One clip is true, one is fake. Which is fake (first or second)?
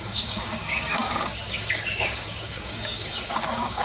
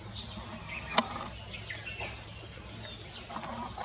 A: first